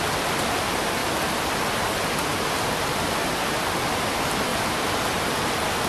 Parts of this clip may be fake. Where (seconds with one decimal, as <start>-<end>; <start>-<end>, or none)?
1.0-3.6; 4.5-5.0